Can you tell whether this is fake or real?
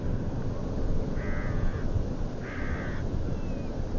real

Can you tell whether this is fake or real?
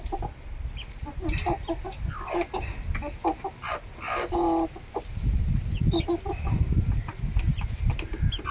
real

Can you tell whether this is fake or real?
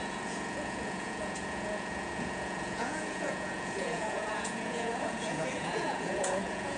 fake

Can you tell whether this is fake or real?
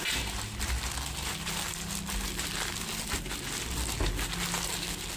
real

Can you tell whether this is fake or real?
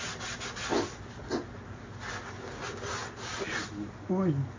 real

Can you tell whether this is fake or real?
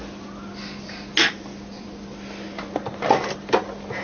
real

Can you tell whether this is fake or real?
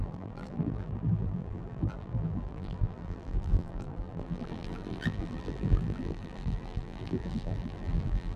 fake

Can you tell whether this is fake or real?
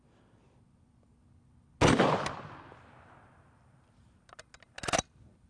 real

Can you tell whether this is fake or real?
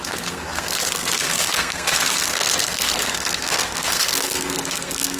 fake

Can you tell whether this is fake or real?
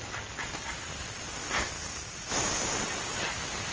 real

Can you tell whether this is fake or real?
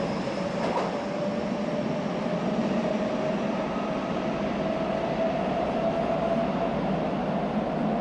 real